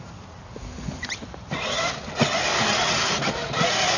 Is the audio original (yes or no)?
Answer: yes